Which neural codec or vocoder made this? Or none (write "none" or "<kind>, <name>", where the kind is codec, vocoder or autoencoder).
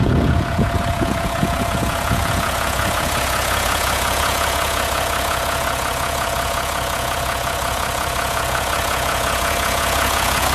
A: vocoder, Vocos